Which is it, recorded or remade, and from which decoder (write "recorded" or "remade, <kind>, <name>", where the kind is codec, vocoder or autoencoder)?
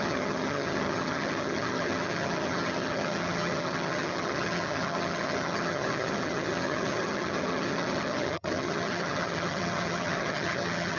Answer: remade, vocoder, HiFi-GAN